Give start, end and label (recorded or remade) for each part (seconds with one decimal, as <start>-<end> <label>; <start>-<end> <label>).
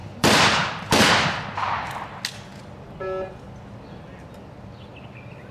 0.0-1.1 remade; 1.1-5.5 recorded